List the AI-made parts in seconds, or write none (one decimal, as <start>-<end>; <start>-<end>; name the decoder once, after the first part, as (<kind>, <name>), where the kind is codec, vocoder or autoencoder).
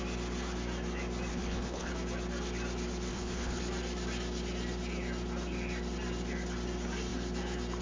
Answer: 1.3-1.9 (codec, HILCodec); 3.1-3.6